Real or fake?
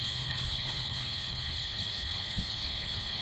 fake